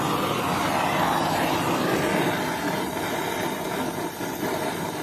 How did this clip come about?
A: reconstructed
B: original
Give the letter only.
B